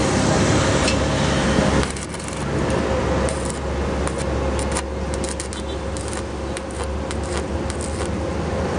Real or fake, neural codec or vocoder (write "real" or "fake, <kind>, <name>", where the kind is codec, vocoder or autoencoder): real